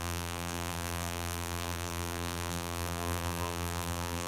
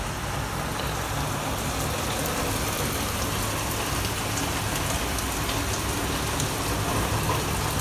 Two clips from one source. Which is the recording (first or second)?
second